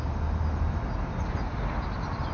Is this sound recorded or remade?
recorded